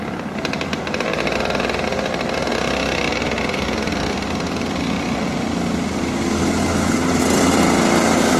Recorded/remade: recorded